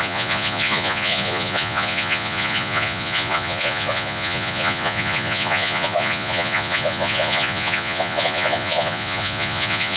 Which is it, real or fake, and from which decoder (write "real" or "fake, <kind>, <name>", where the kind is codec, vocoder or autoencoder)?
fake, vocoder, Vocos